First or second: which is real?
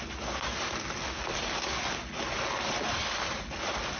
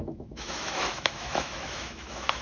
first